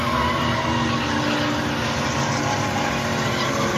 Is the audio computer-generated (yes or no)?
no